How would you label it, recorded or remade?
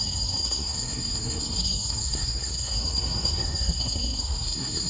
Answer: remade